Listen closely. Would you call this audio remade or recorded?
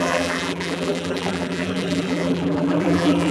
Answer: remade